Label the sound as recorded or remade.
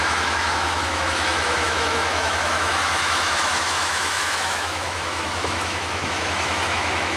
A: remade